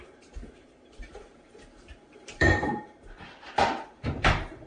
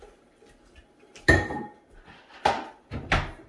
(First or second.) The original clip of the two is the second